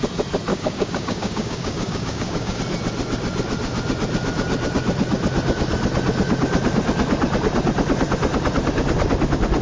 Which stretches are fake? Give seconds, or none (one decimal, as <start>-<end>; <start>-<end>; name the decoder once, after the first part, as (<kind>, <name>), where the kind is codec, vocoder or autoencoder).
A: 0.5-2.6 (codec, DAC)